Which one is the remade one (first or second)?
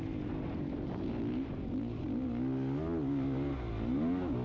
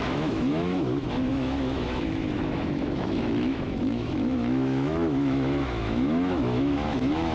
second